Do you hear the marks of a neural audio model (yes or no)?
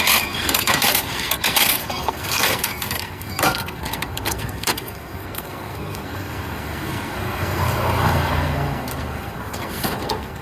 yes